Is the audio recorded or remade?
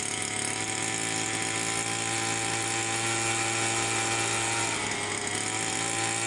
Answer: recorded